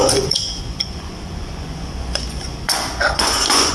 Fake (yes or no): yes